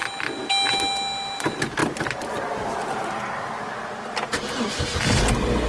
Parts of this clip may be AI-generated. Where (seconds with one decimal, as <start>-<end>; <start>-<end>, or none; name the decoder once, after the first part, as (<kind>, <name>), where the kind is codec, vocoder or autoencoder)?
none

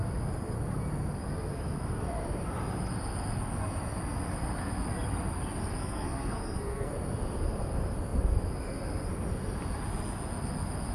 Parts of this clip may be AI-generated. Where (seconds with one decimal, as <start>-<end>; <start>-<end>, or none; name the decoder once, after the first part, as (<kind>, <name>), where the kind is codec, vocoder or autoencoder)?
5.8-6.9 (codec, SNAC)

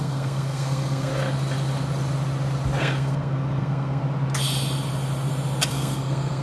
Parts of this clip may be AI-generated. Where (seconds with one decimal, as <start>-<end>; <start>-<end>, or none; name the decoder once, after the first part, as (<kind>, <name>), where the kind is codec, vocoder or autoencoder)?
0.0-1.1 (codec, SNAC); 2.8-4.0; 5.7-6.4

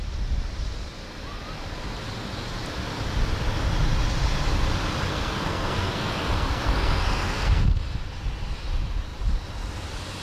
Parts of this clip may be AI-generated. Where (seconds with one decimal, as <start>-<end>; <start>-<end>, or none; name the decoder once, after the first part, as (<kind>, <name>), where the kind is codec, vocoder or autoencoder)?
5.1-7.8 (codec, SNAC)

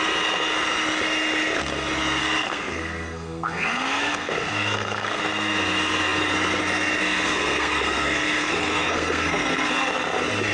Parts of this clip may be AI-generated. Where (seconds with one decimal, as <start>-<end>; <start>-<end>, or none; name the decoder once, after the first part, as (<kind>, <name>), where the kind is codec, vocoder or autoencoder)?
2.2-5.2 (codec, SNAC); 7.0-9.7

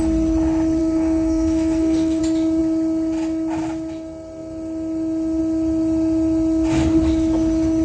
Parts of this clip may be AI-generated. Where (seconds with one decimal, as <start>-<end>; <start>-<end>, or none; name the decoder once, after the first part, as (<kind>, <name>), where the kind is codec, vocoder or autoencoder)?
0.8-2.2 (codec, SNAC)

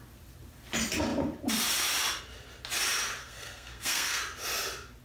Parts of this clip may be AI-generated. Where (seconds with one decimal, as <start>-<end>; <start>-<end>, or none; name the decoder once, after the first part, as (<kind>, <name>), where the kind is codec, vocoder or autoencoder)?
3.2-4.2 (codec, SNAC)